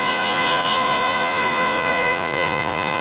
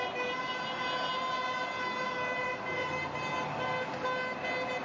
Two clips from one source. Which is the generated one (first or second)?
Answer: first